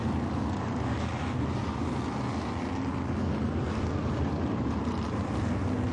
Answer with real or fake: real